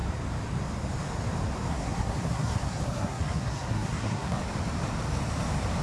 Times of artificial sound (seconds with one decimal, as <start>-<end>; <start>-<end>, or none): 1.7-4.4